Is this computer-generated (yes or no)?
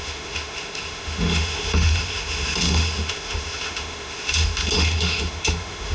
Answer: yes